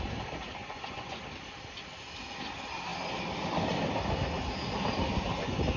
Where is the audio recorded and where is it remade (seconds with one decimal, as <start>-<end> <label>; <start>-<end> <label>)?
0.0-0.6 recorded; 0.6-1.2 remade; 1.2-5.8 recorded